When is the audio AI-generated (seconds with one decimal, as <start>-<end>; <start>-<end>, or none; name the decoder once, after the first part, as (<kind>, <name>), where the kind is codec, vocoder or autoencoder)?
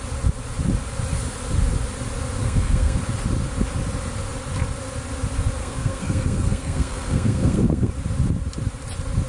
2.4-3.0 (codec, SNAC); 5.6-7.9